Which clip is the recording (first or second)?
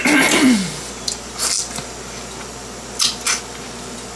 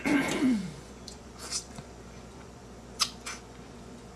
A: first